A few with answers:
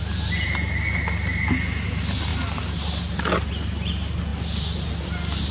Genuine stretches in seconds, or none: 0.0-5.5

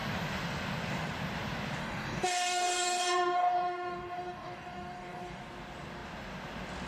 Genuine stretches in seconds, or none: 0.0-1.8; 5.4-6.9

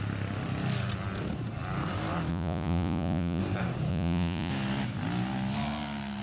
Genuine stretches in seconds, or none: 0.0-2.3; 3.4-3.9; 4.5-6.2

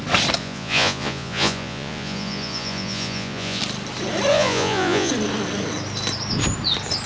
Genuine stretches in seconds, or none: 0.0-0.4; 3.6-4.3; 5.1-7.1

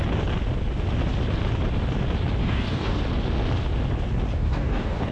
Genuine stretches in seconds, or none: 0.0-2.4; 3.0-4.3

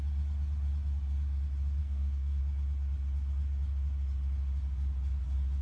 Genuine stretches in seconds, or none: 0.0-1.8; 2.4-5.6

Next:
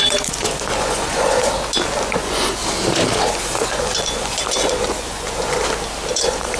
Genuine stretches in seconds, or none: 1.4-2.0; 2.6-3.4; 5.6-6.1